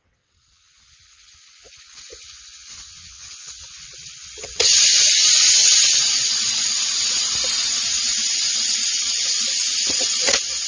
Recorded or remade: remade